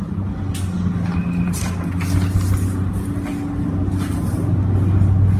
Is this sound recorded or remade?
recorded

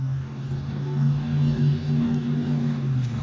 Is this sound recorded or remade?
remade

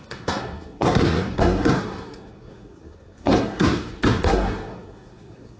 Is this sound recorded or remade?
remade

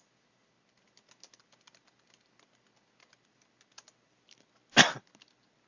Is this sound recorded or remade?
recorded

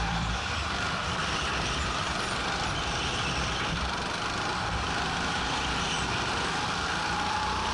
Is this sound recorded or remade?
remade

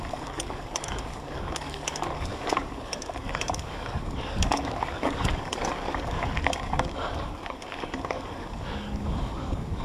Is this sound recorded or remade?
remade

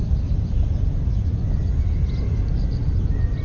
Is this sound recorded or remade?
recorded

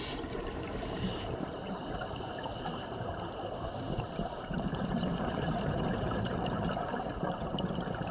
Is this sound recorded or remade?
remade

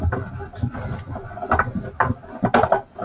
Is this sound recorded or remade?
recorded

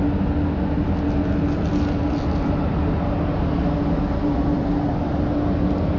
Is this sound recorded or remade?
recorded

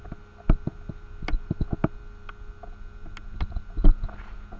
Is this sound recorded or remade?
recorded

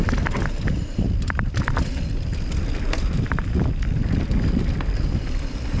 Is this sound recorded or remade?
remade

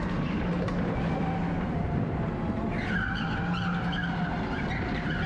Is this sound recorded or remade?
recorded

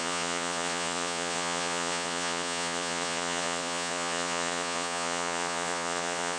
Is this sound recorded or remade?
remade